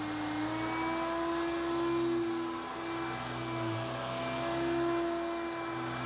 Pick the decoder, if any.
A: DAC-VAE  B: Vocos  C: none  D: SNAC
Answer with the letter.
C